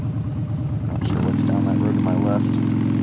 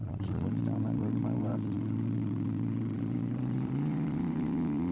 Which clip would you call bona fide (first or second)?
first